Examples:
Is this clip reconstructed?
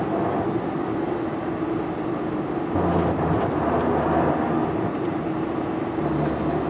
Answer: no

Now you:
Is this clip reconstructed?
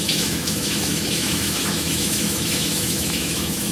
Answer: yes